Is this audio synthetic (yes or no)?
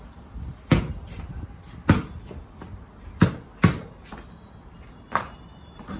no